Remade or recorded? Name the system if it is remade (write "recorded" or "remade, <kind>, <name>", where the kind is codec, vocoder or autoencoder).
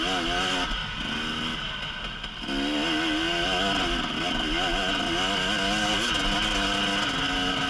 recorded